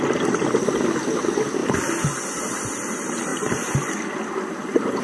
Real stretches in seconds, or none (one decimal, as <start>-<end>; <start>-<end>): 0.0-1.6; 2.6-3.3; 3.9-5.0